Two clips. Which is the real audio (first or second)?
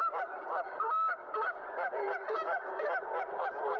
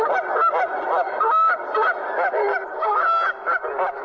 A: second